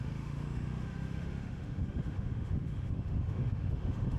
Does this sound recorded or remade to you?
remade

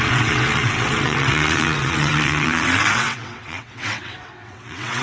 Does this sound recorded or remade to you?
remade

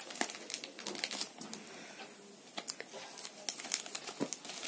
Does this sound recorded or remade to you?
recorded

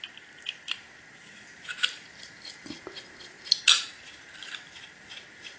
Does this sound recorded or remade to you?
recorded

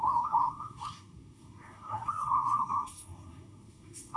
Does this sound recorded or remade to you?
remade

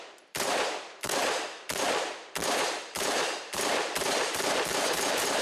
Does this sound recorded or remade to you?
remade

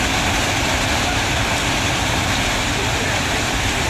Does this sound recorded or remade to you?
recorded